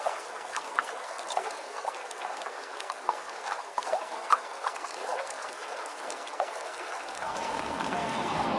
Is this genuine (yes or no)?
no